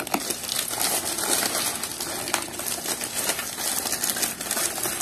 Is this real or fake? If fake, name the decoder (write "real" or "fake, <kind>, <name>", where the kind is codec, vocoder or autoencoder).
real